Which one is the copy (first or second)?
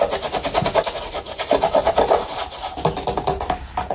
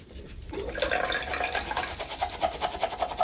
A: second